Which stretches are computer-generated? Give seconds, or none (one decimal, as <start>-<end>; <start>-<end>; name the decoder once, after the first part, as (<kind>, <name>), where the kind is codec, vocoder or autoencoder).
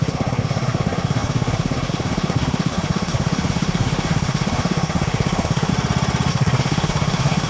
0.0-5.7 (codec, SNAC); 6.3-7.5